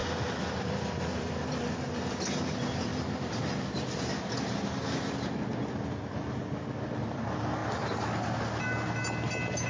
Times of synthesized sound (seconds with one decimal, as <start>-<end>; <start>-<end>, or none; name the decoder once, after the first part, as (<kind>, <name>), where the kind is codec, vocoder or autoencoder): none